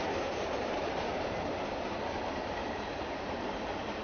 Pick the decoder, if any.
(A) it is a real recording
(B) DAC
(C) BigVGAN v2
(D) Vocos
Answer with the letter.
C